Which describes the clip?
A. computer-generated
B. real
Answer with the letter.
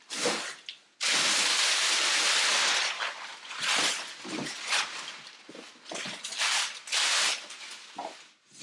B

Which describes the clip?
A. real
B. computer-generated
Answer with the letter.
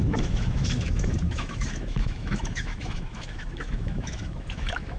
B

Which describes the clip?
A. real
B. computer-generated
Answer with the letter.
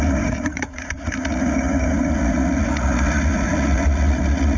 B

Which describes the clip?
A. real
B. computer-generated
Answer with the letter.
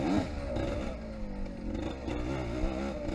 A